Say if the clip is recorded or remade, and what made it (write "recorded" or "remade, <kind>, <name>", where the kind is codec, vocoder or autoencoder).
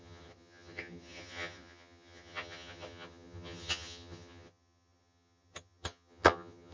remade, vocoder, HiFi-GAN